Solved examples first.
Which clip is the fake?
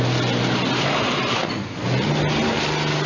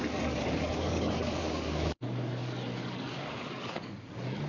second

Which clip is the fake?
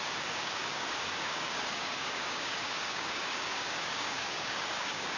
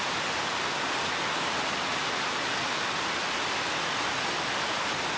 first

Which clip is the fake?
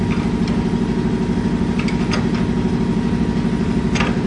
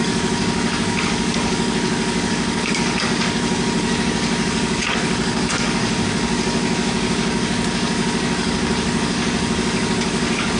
second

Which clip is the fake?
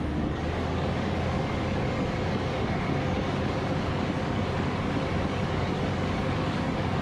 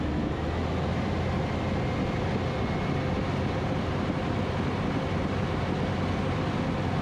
first